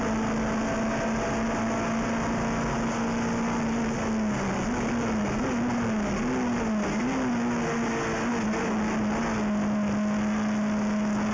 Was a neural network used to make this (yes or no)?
no